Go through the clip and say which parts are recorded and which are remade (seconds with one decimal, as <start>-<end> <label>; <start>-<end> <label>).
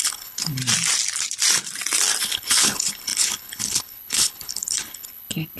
0.0-0.6 remade; 0.6-2.2 recorded; 2.2-5.6 remade